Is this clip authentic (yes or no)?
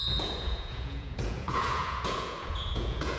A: no